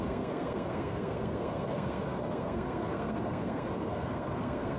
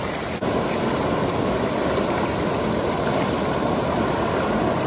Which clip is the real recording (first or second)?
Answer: second